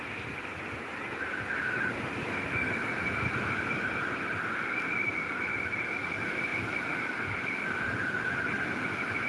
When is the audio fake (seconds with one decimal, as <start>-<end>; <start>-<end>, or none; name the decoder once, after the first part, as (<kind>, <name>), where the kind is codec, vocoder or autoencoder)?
none